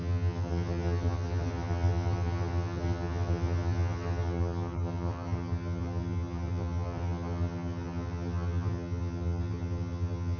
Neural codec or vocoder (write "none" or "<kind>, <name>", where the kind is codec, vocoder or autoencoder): vocoder, HiFi-GAN